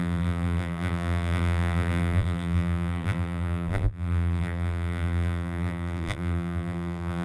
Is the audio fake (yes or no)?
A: yes